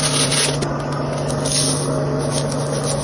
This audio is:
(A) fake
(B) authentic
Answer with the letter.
B